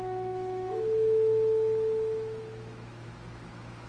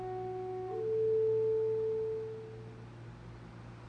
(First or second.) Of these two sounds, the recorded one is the second